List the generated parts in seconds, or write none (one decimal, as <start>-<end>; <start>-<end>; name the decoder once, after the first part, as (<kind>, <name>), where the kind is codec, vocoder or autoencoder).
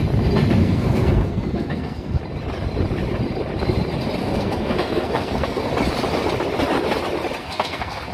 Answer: 0.6-2.2 (codec, SNAC); 4.2-5.7; 7.4-8.1